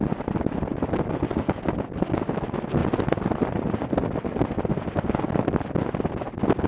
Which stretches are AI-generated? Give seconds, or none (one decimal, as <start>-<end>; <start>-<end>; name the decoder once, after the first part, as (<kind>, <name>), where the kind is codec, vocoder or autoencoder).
none